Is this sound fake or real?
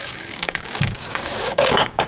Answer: fake